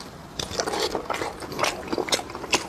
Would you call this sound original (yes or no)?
yes